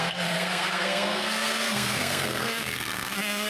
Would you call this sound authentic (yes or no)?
no